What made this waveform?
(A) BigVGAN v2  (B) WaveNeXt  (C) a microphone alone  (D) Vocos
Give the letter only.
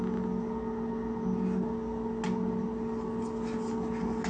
C